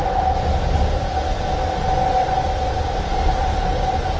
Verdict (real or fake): real